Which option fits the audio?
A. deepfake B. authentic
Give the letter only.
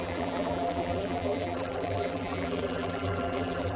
A